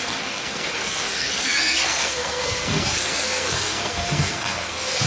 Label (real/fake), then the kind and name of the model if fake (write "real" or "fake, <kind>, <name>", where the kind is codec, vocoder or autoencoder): fake, codec, SNAC